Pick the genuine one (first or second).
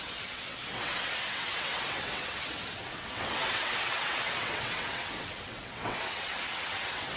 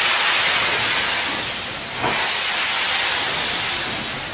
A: second